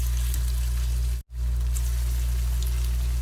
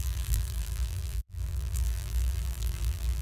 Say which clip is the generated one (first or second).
second